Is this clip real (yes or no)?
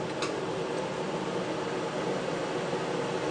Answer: yes